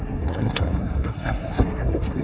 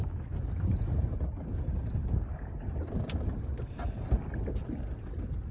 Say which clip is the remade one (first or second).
first